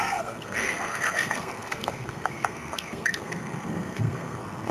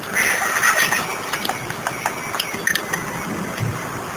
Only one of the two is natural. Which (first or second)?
second